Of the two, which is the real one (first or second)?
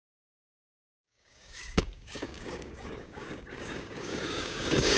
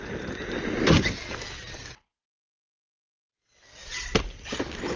second